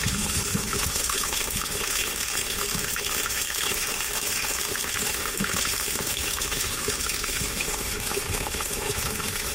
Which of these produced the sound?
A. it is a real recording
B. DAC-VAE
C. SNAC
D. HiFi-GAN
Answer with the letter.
B